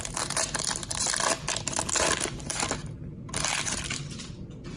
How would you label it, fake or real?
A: real